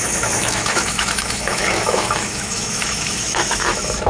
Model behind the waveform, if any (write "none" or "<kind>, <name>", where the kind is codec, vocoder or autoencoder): autoencoder, DAC-VAE